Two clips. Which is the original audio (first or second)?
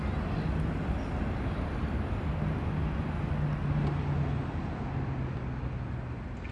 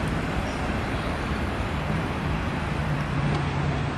first